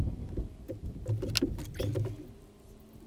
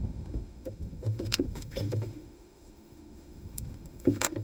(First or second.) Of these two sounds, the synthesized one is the second